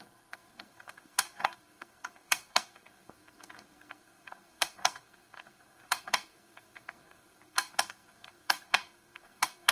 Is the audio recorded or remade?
remade